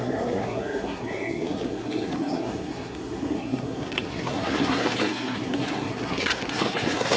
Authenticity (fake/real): fake